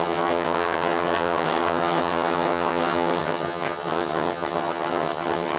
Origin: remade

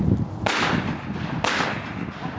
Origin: recorded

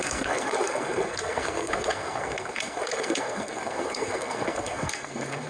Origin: remade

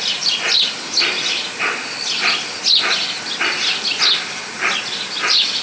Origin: recorded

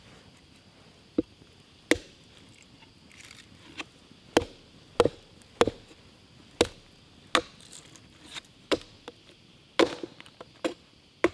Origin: recorded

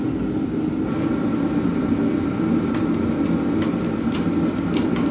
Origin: recorded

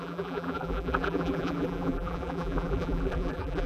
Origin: remade